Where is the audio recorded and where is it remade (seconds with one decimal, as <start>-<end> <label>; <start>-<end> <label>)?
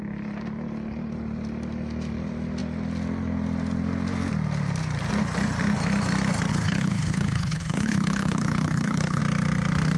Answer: 0.0-6.5 recorded; 6.5-9.2 remade; 9.2-10.0 recorded